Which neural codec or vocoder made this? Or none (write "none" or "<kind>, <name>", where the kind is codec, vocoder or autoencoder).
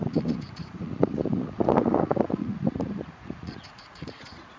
vocoder, Vocos